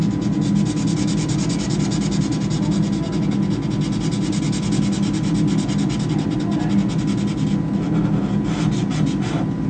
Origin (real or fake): real